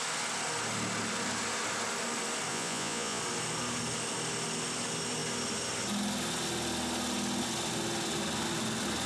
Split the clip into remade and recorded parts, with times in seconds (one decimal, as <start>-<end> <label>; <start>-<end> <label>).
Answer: 0.0-2.5 recorded; 2.5-3.2 remade; 3.2-9.1 recorded